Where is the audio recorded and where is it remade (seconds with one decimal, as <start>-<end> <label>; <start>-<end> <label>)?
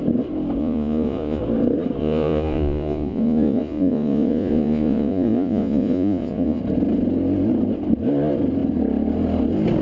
0.0-0.6 recorded; 0.6-1.4 remade; 1.4-2.0 recorded; 2.0-6.6 remade; 6.6-9.8 recorded